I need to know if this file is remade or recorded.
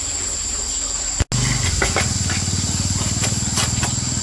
recorded